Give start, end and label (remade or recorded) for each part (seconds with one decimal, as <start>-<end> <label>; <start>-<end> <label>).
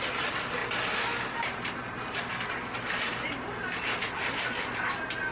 0.0-5.3 recorded